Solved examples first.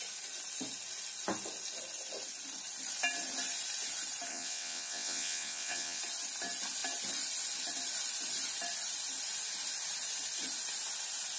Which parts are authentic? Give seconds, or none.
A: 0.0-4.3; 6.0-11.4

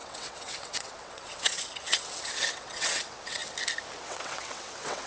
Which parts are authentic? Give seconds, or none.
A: 3.4-4.0

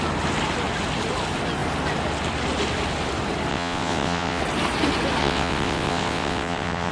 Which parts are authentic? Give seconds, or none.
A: 0.0-3.5; 4.4-5.2

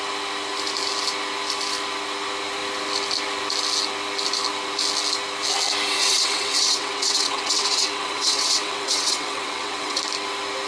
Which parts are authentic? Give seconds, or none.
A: 0.0-6.0; 10.0-10.7